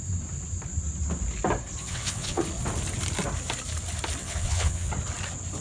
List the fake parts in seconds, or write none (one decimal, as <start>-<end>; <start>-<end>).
1.8-2.4; 4.2-4.9